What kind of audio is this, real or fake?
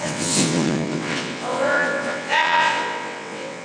fake